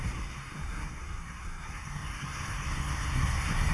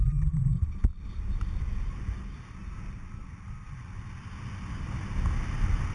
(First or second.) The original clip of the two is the second